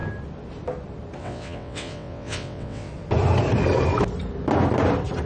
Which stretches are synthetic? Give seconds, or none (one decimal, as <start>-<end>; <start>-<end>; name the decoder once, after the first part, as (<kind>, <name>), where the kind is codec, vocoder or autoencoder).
1.2-2.9 (vocoder, WaveNeXt)